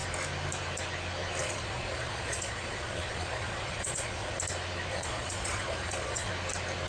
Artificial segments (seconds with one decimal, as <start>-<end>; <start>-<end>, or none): 1.4-4.4; 4.9-6.3